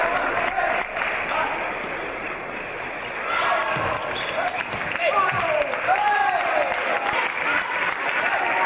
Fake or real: real